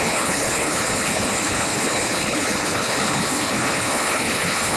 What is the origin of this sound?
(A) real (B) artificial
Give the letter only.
B